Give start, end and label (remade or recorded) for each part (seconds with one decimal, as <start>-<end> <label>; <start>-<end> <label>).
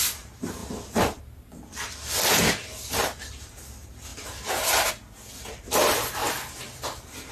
0.0-0.6 recorded; 0.6-1.2 remade; 1.2-4.1 recorded; 4.1-4.9 remade; 4.9-7.3 recorded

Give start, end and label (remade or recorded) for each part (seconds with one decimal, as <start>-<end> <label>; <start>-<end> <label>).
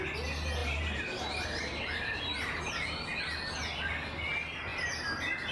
0.0-0.6 recorded; 0.6-2.6 remade; 2.6-5.5 recorded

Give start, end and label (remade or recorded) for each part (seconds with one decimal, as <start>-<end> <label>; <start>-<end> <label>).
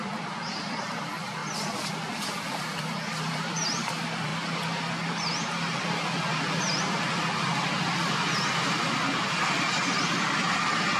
0.0-4.3 remade; 4.3-9.3 recorded; 9.3-11.0 remade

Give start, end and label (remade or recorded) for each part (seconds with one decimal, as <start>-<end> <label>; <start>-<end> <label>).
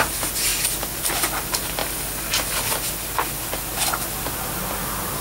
0.0-5.2 recorded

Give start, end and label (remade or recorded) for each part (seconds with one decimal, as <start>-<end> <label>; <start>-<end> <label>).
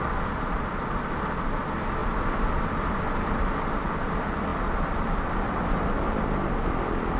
0.0-7.2 recorded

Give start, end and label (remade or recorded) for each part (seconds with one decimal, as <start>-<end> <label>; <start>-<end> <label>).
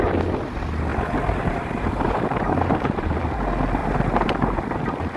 0.0-0.9 recorded; 0.9-3.2 remade; 3.2-3.8 recorded; 3.8-5.2 remade